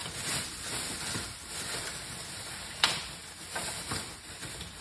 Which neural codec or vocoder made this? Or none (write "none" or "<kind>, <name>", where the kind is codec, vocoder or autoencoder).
none